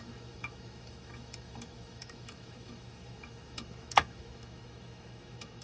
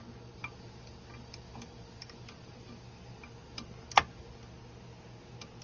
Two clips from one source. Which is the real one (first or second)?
second